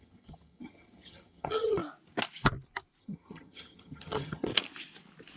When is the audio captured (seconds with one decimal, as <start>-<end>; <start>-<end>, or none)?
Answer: 1.8-3.0; 4.5-5.4